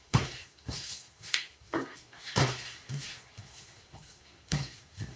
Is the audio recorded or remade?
remade